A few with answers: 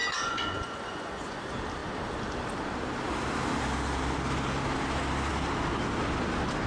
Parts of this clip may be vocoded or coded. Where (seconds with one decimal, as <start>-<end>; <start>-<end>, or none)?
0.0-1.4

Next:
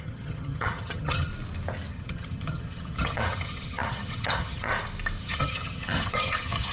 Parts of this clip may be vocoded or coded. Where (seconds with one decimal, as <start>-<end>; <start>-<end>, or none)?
0.0-1.3; 1.9-4.7; 5.2-6.7

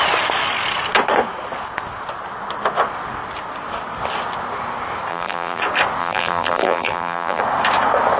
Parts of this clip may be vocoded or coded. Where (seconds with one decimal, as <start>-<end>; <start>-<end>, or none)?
5.1-5.6; 6.0-7.4